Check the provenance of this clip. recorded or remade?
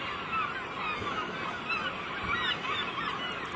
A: recorded